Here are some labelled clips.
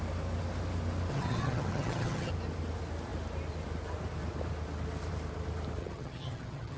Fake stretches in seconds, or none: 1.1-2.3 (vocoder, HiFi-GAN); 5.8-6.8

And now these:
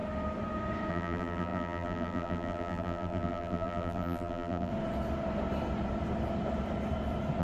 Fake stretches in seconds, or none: 0.9-4.7 (vocoder, BigVGAN v2)

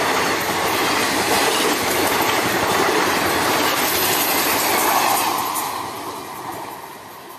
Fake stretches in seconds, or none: 0.0-5.0 (vocoder, BigVGAN v2); 6.5-7.4

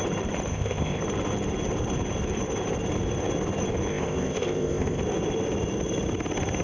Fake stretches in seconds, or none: 0.5-1.0 (codec, ZipCodec); 3.9-5.0

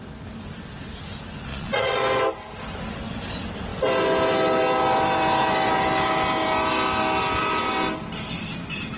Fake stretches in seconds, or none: 1.5-2.0 (vocoder, Vocos)

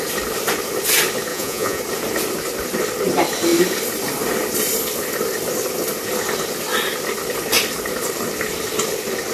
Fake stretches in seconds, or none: 1.3-1.8 (vocoder, Vocos)